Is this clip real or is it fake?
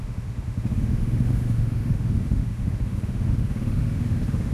fake